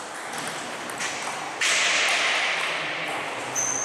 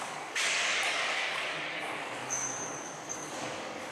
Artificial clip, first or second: second